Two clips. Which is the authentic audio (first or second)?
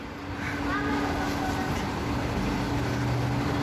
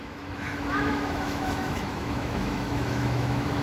first